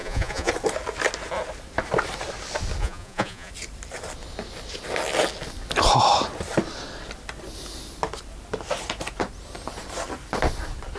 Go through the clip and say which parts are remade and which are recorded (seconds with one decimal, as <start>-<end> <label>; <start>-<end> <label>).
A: 0.0-0.5 remade; 0.5-2.8 recorded; 2.8-3.5 remade; 3.5-11.0 recorded

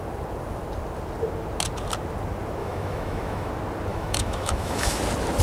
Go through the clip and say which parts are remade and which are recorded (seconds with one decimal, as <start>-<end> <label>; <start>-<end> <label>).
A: 0.0-2.6 recorded; 2.6-3.5 remade; 3.5-3.9 recorded; 3.9-5.0 remade; 5.0-5.4 recorded